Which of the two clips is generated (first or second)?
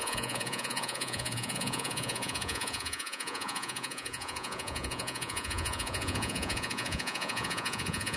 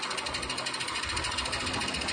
first